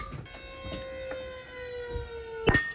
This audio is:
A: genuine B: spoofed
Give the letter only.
A